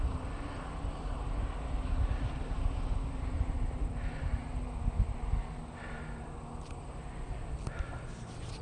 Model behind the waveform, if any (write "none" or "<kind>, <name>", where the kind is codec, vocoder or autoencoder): none